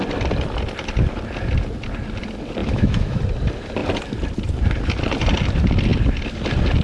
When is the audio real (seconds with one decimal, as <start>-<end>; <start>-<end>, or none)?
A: 0.0-2.6; 3.2-6.8